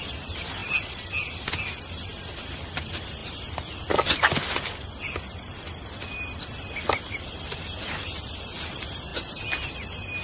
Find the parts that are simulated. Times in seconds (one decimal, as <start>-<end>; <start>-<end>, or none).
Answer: none